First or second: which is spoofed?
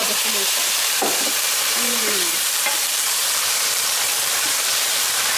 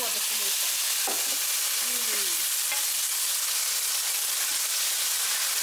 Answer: first